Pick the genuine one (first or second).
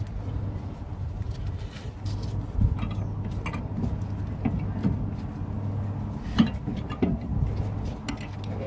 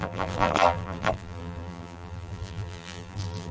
first